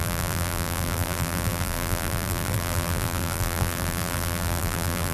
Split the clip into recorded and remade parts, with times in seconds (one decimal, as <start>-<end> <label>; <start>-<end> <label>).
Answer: 0.0-5.1 remade